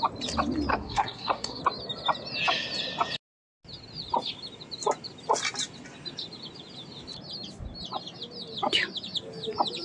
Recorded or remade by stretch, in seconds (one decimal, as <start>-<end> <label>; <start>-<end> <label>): 0.0-0.7 recorded; 0.7-1.6 remade; 1.6-9.8 recorded

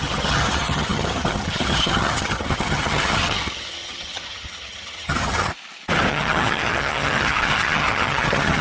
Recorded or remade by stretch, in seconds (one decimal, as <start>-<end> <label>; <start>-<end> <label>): 0.0-5.5 remade; 5.5-6.1 recorded; 6.1-8.6 remade

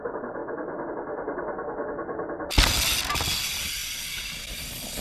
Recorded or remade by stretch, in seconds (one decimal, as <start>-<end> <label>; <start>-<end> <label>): 0.0-5.0 recorded

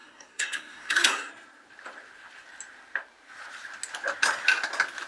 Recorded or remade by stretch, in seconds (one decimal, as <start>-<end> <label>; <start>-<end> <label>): 0.0-1.3 remade; 1.3-5.1 recorded

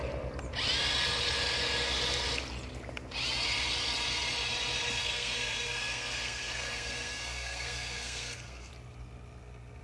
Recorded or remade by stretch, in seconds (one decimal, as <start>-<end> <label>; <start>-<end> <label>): 0.0-5.0 recorded; 5.0-8.7 remade; 8.7-9.8 recorded

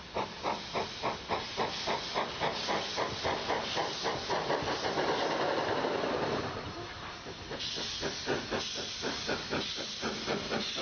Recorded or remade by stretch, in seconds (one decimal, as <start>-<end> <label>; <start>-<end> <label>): 0.0-10.8 recorded

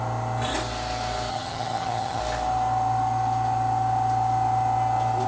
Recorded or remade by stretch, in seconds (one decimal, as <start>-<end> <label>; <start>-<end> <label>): 0.0-1.3 recorded; 1.3-2.2 remade; 2.2-5.3 recorded